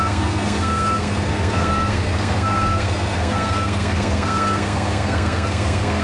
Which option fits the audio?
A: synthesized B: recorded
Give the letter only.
A